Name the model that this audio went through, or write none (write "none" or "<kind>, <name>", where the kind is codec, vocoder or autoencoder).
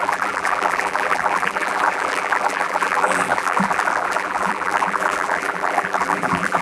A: vocoder, BigVGAN v2